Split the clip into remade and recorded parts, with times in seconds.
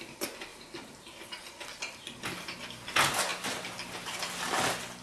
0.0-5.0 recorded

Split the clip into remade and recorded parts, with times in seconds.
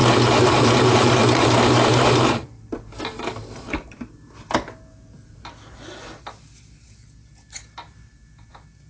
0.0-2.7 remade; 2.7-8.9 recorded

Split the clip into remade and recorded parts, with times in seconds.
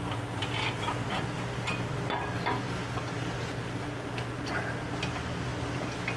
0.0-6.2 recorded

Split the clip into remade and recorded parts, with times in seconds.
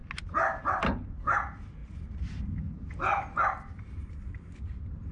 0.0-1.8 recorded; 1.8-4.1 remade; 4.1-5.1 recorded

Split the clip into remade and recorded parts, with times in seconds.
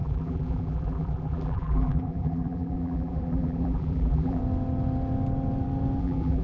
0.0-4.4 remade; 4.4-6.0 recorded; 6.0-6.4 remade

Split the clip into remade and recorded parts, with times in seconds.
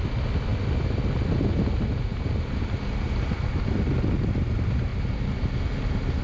0.0-4.9 recorded; 4.9-5.5 remade; 5.5-6.2 recorded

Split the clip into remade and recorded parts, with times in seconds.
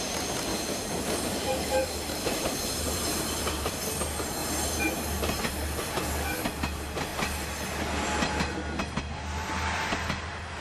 0.0-0.5 recorded; 0.5-3.7 remade; 3.7-4.4 recorded; 4.4-5.4 remade; 5.4-10.6 recorded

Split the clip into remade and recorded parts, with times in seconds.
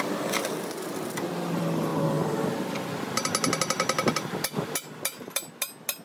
0.0-6.0 recorded